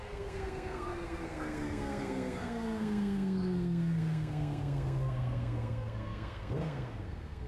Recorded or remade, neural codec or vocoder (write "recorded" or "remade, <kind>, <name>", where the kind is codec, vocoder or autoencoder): remade, codec, SNAC